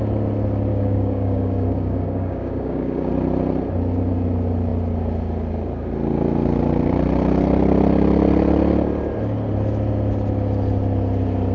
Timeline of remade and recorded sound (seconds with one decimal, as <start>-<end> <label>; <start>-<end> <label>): 0.0-0.7 recorded; 0.7-3.1 remade; 3.1-11.5 recorded